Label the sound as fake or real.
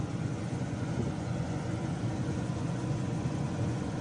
fake